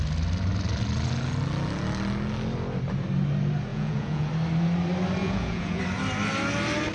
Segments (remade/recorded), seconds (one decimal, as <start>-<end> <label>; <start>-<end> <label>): 0.0-3.7 recorded; 3.7-4.3 remade; 4.3-5.2 recorded; 5.2-5.8 remade; 5.8-6.9 recorded